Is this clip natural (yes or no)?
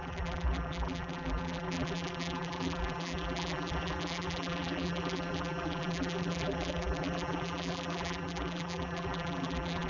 no